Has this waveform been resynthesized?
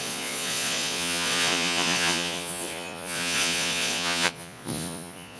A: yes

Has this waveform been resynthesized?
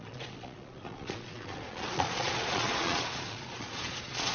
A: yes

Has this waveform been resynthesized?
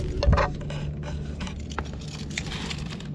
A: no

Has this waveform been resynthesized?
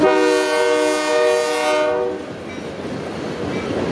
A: no